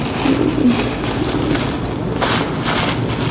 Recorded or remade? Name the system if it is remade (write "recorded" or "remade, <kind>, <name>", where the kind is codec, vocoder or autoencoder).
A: recorded